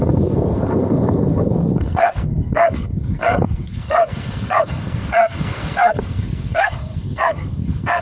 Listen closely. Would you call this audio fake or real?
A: fake